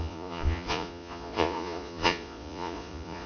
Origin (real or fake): fake